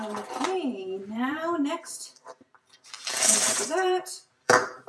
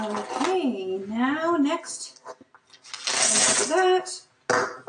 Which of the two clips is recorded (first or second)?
second